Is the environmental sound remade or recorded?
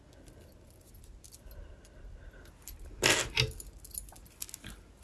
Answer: recorded